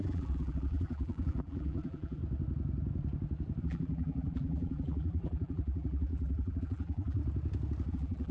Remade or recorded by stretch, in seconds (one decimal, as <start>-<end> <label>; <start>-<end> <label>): 0.0-2.2 remade; 2.2-3.6 recorded; 3.6-7.2 remade; 7.2-7.9 recorded; 7.9-8.3 remade

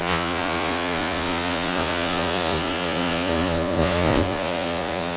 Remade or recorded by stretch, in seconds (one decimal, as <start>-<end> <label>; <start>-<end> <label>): 0.0-5.2 remade

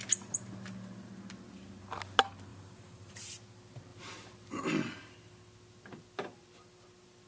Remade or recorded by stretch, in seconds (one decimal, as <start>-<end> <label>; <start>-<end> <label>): 0.0-2.5 recorded; 2.5-3.3 remade; 3.3-7.3 recorded

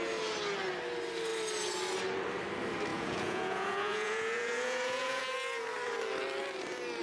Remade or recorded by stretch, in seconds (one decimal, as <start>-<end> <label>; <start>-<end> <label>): 0.0-2.9 recorded; 2.9-5.2 remade; 5.2-7.0 recorded

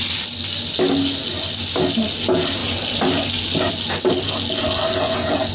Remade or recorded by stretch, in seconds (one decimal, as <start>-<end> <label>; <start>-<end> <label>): 0.0-5.5 recorded